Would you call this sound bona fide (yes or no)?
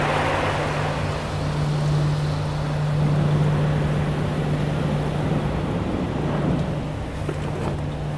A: yes